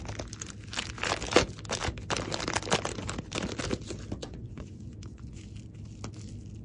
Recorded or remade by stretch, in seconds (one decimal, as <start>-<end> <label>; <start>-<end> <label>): 0.0-4.2 recorded; 4.2-5.4 remade; 5.4-6.6 recorded